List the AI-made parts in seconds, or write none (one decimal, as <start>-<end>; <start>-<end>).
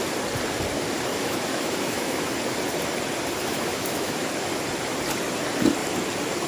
1.1-2.3; 3.5-4.3